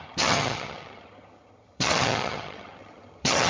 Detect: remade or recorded remade